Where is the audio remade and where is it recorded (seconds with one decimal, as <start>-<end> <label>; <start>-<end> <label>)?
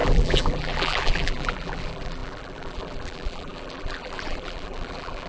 0.0-5.3 remade